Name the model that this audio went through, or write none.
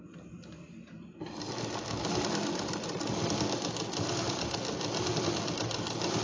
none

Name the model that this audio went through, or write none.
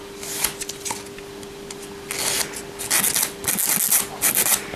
none